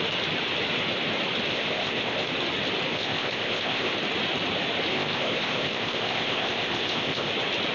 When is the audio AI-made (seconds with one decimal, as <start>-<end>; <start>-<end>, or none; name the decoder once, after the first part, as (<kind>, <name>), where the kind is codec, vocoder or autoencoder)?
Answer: 1.5-2.3 (codec, ZipCodec); 2.9-3.9; 4.9-7.3

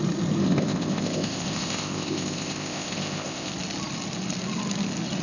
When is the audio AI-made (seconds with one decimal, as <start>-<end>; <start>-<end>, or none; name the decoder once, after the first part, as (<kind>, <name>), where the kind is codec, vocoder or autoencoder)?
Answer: 0.4-3.5 (codec, ZipCodec)

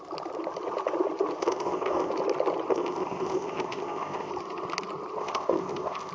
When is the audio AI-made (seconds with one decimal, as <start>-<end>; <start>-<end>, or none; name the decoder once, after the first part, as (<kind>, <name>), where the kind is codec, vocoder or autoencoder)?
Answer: 1.4-2.1 (codec, ZipCodec); 2.7-4.3; 5.2-6.1

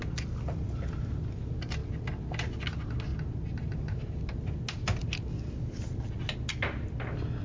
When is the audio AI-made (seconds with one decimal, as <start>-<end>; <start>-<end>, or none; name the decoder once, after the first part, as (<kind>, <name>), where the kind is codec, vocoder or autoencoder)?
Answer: none

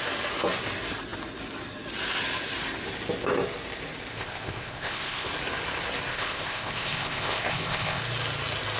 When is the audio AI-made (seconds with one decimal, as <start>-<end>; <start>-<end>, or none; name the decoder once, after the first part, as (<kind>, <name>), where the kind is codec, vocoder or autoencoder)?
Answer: 4.1-5.3 (codec, ZipCodec); 6.1-8.0

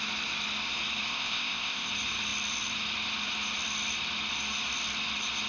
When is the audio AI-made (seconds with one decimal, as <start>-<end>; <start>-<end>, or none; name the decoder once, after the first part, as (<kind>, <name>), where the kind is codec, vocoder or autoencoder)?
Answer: 1.1-1.9 (codec, ZipCodec)